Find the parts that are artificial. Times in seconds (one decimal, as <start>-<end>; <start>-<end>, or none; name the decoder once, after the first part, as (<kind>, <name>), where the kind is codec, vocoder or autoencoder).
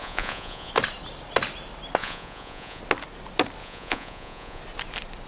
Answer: 0.0-0.7 (vocoder, Vocos); 2.0-2.8; 3.6-4.6